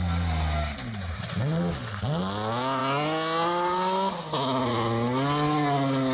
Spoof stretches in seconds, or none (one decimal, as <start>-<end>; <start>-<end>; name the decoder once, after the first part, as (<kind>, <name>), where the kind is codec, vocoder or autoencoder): none